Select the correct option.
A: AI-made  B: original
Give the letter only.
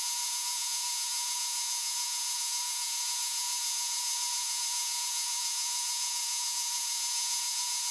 A